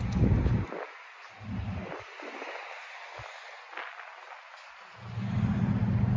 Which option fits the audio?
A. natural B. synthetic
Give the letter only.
A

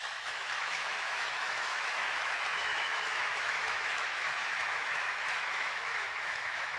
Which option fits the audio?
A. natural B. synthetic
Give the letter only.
B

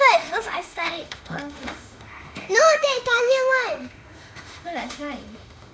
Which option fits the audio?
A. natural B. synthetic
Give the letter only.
B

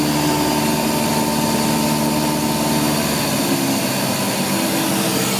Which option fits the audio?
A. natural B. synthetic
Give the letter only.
A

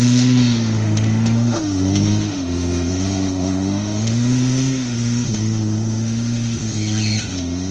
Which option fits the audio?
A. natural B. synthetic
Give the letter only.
B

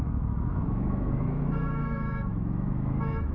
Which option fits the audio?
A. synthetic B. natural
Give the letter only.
A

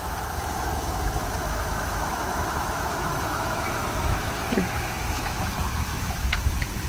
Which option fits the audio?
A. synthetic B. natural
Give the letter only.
A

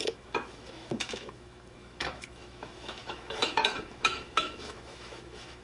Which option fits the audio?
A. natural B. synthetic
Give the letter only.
B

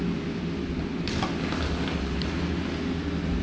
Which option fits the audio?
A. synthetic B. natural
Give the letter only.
B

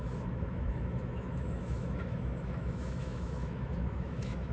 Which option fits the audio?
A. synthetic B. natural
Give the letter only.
A